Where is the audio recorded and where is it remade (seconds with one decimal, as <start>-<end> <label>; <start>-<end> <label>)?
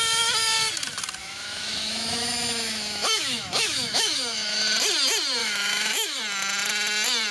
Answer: 0.0-1.2 recorded; 1.2-4.6 remade; 4.6-5.4 recorded; 5.4-6.2 remade; 6.2-7.3 recorded